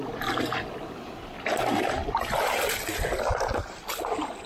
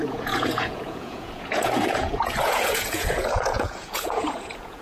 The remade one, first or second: second